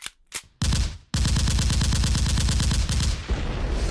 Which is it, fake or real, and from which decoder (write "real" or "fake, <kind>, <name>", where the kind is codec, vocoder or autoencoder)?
real